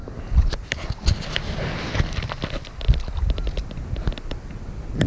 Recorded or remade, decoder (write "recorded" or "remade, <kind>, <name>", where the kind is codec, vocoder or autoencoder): recorded